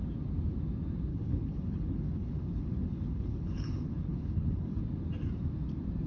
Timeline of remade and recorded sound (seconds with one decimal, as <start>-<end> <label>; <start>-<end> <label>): 0.0-1.1 recorded; 1.1-4.8 remade; 4.8-6.1 recorded